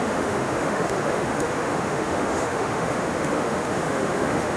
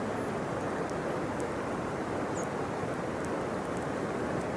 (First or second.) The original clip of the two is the second